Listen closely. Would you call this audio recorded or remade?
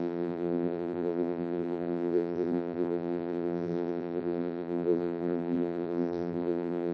remade